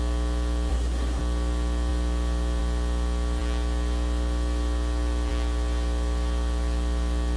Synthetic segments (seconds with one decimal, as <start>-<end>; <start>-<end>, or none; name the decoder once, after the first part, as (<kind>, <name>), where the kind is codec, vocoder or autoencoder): 0.7-1.2 (codec, SNAC)